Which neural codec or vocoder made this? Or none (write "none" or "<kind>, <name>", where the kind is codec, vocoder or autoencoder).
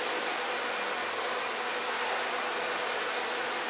none